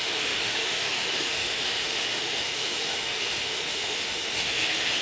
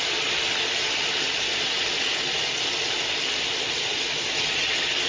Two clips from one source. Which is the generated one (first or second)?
first